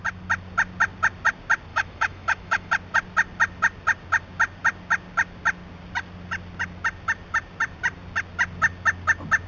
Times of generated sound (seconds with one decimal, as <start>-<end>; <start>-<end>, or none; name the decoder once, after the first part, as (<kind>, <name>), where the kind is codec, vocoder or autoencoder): 1.7-2.7 (autoencoder, DAC-VAE)